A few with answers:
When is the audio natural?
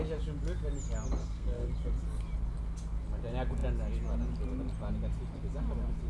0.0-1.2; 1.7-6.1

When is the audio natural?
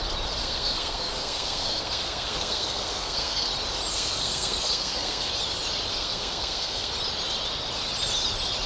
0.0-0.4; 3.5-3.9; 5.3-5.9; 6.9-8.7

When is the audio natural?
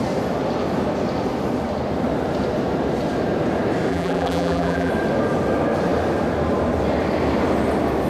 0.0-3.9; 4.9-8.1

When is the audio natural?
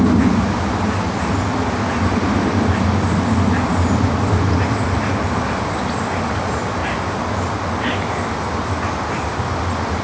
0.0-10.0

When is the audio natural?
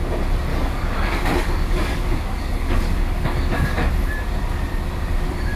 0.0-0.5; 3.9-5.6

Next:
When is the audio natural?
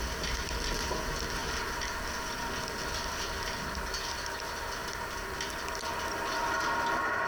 0.0-7.3